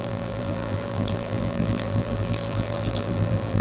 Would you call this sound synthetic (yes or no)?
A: yes